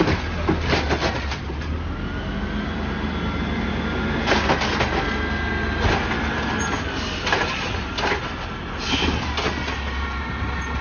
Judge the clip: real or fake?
real